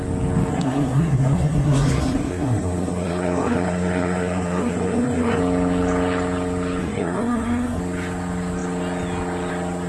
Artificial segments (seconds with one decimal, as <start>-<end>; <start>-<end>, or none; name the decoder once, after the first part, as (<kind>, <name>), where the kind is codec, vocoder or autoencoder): 0.5-5.4 (codec, SNAC); 6.8-7.8

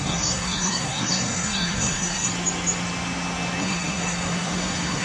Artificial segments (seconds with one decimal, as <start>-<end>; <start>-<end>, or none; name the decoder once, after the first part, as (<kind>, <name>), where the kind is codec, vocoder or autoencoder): 0.0-2.3 (codec, SNAC); 3.6-5.0

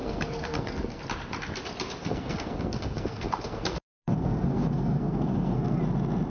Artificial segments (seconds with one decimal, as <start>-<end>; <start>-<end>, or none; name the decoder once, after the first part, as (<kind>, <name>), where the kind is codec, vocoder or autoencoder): 0.0-1.0 (codec, SNAC); 2.0-5.8

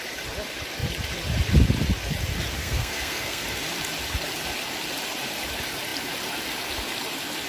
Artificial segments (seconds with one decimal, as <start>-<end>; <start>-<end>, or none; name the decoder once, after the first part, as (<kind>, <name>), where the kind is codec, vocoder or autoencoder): 2.6-3.4 (codec, SNAC)